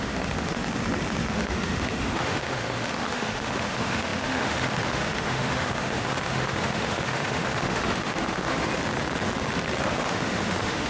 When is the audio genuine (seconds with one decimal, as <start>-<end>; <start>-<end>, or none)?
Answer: 0.6-1.3; 8.7-9.8